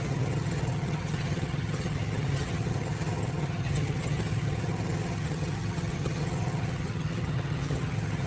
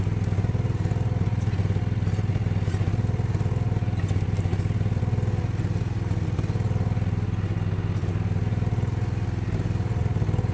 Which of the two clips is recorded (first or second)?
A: second